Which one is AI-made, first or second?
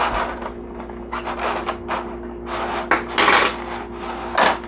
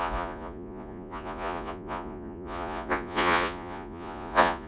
second